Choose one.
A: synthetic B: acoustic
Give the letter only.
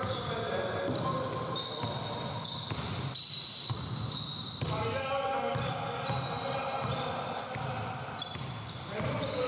B